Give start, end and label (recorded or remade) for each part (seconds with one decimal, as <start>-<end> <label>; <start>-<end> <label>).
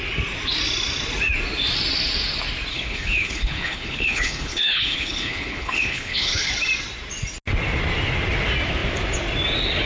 0.0-2.7 recorded; 2.7-6.5 remade; 6.5-9.9 recorded